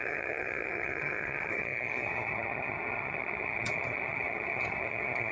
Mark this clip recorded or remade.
remade